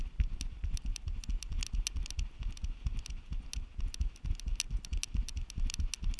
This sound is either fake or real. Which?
real